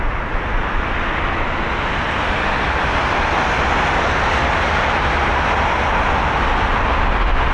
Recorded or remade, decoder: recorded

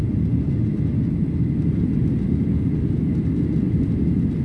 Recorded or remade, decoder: remade, vocoder, BigVGAN v2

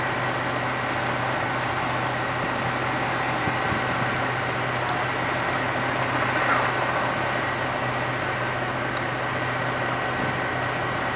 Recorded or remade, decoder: recorded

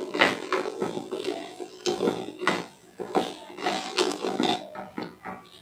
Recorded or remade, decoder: remade, vocoder, BigVGAN v2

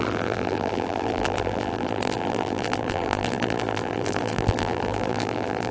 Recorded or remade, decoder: remade, vocoder, BigVGAN v2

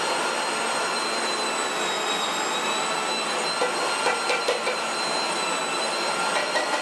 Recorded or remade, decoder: recorded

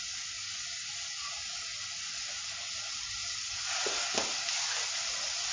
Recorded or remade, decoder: recorded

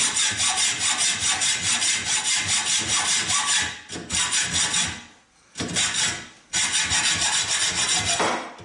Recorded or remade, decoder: recorded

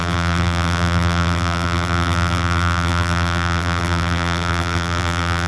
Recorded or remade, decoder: remade, vocoder, BigVGAN v2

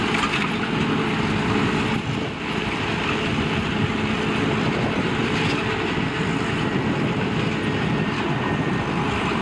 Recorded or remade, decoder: remade, vocoder, BigVGAN v2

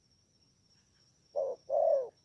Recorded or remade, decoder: recorded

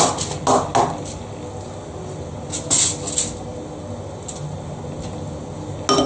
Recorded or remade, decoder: recorded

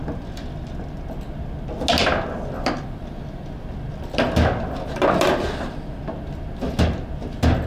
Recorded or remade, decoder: recorded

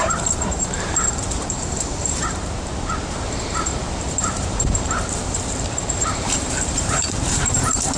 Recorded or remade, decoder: remade, vocoder, BigVGAN v2